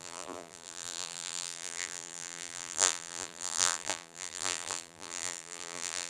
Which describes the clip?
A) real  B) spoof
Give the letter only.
B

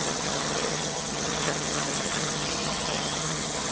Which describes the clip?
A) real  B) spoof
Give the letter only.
B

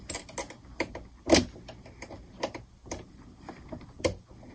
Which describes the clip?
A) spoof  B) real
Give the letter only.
B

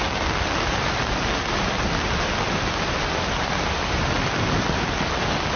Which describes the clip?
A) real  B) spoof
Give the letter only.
A